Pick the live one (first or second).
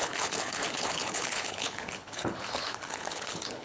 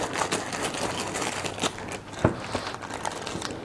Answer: second